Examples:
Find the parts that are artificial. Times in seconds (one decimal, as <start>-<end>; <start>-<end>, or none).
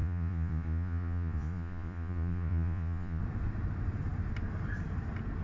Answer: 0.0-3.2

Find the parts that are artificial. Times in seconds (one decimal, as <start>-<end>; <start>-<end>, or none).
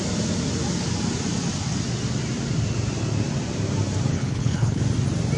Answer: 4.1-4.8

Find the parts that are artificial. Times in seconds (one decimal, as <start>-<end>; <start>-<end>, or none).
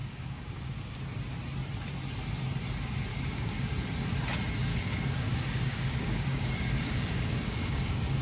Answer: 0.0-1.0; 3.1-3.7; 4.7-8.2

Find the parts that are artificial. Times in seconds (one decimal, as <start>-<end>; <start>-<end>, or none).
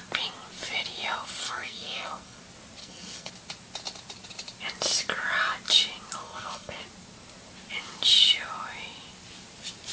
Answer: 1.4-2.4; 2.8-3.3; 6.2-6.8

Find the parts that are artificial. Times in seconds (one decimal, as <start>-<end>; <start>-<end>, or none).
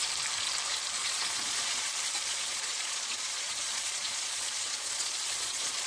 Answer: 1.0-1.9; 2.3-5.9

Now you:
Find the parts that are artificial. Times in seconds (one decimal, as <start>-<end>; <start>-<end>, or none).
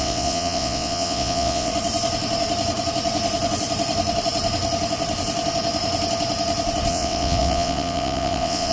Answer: 0.0-1.7; 6.9-8.7